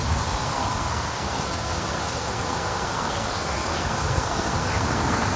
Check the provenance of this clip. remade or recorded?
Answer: remade